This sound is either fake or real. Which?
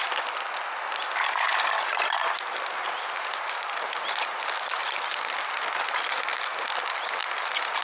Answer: real